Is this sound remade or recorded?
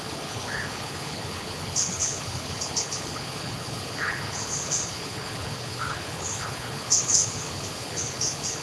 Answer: remade